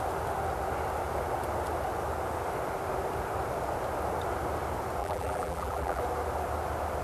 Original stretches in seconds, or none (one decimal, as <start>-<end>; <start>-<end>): 0.0-5.0; 6.0-7.0